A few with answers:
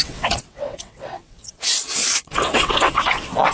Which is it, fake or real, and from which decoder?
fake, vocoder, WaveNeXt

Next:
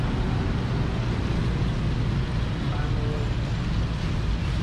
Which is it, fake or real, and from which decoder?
real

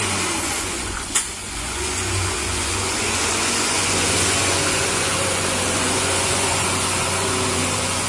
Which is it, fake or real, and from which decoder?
fake, vocoder, Vocos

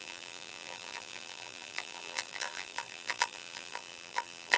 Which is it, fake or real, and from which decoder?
fake, vocoder, BigVGAN v2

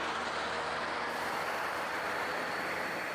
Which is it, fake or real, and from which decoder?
real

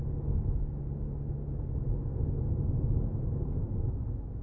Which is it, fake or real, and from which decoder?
real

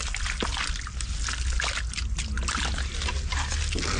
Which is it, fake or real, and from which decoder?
real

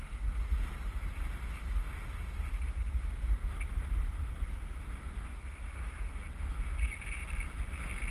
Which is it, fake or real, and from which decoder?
real